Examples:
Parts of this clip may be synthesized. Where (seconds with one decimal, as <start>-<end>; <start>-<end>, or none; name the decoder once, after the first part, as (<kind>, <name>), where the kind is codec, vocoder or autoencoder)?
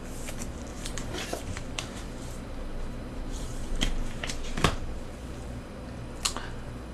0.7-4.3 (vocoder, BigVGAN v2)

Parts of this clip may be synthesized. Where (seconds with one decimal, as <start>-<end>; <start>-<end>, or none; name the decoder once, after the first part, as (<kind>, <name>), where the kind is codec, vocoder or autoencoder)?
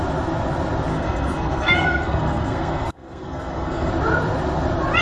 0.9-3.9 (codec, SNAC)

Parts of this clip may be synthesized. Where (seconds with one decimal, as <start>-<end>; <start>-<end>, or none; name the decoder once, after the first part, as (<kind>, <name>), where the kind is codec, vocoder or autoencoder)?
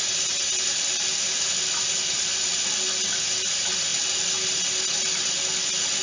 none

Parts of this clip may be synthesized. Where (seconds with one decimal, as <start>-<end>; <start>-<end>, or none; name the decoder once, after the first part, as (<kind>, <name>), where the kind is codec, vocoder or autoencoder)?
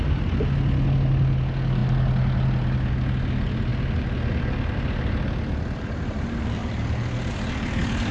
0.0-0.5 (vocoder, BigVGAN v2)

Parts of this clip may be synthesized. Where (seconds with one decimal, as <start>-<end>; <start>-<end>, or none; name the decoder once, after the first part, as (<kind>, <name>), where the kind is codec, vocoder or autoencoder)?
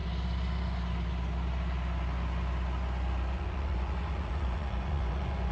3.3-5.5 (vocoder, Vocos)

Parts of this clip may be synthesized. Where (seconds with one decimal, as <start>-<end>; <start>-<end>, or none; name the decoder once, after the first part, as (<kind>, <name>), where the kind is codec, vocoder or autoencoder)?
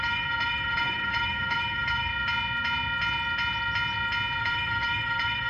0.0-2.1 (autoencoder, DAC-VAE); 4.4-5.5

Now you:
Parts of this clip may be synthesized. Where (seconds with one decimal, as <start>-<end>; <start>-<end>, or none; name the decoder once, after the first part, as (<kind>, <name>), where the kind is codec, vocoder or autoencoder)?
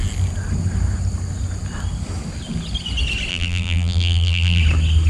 3.3-4.6 (vocoder, BigVGAN v2)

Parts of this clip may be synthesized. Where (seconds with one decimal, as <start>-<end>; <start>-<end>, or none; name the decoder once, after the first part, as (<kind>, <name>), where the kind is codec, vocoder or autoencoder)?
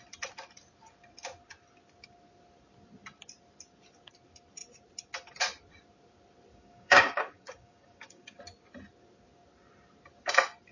6.5-8.4 (codec, DAC)